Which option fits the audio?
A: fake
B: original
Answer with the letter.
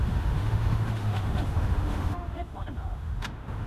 A